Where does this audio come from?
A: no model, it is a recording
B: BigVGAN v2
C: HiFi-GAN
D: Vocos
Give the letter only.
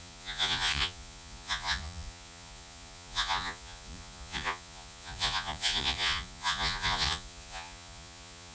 D